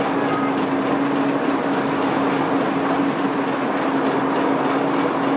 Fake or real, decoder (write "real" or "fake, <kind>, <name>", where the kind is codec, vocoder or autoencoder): real